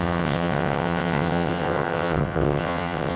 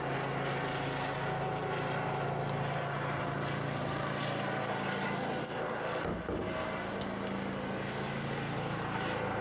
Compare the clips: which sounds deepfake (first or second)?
first